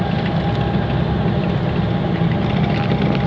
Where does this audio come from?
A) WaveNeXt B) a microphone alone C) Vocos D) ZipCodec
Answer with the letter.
B